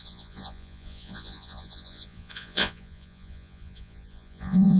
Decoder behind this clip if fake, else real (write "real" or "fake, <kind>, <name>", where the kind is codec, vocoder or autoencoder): fake, vocoder, Vocos